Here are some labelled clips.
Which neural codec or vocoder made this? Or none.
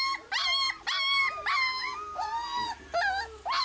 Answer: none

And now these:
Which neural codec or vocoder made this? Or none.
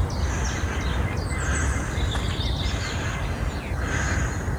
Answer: none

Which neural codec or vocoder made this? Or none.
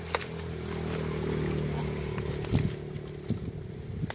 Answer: none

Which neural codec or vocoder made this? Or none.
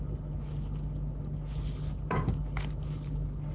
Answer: none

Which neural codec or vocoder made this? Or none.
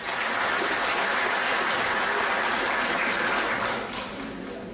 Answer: none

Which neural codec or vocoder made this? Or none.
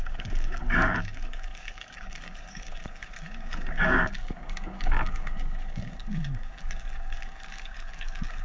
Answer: codec, DAC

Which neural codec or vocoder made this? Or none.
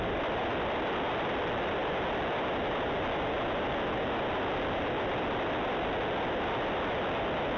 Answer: none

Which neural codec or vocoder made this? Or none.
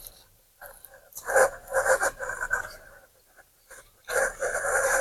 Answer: vocoder, BigVGAN v2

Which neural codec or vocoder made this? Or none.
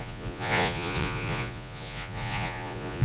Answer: vocoder, Vocos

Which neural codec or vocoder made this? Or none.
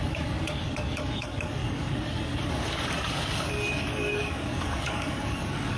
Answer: codec, DAC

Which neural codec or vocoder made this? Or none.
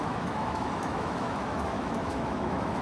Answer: autoencoder, DAC-VAE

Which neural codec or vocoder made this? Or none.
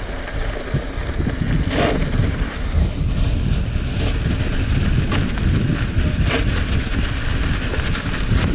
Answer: none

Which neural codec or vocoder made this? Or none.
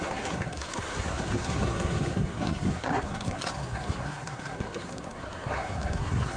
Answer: codec, SNAC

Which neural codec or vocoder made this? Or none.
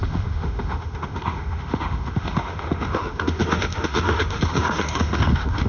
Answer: autoencoder, DAC-VAE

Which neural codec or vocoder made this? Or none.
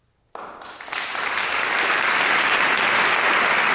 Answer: none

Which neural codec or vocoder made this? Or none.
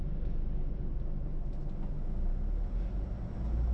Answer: none